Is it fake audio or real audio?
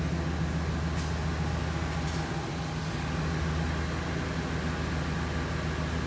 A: real